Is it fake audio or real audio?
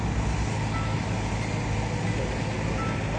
real